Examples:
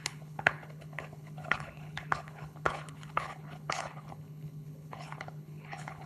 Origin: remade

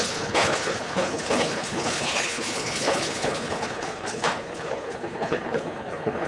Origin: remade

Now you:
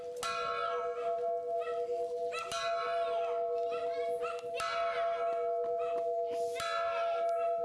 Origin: recorded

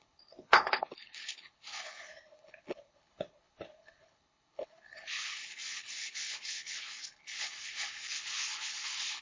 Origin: remade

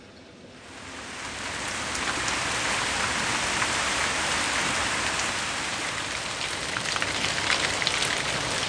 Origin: recorded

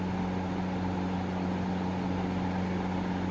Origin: recorded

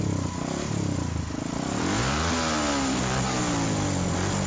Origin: recorded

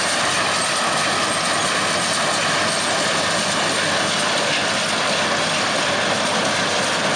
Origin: recorded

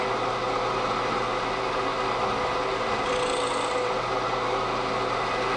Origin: recorded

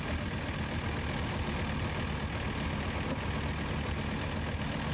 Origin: recorded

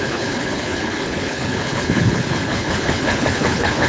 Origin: remade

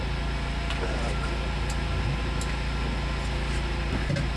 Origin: recorded